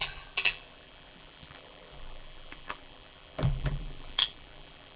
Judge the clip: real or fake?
fake